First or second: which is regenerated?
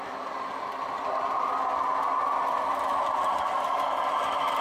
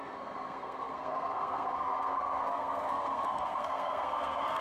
second